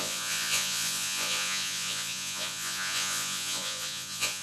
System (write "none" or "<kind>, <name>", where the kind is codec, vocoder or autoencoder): vocoder, Vocos